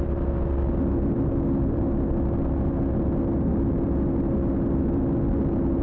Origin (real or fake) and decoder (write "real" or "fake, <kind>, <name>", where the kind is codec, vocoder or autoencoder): real